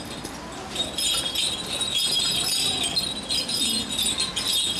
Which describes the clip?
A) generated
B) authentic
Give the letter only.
B